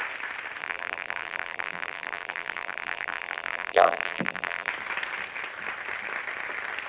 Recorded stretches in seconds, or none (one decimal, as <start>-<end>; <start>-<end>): 0.0-0.6; 4.7-6.9